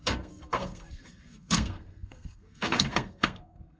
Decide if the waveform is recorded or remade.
remade